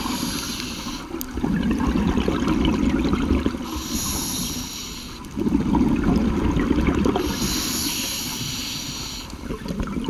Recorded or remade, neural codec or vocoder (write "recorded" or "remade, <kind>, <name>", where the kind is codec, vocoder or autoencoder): recorded